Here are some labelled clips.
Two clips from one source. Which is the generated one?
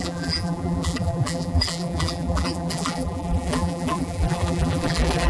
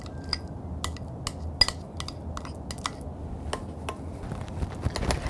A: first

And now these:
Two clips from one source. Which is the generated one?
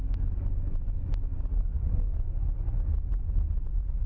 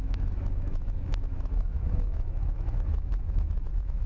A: second